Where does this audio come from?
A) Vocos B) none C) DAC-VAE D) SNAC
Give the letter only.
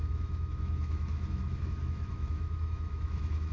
C